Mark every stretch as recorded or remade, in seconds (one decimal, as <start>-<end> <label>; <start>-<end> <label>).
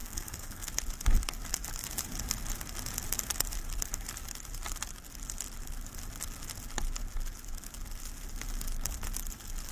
0.0-0.7 remade; 0.7-9.7 recorded